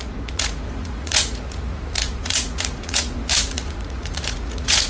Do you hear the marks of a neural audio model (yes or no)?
yes